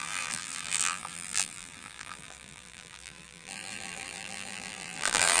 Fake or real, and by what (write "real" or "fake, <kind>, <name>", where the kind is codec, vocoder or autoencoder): fake, vocoder, BigVGAN v2